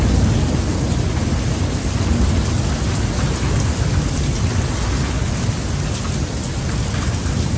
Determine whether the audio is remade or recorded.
recorded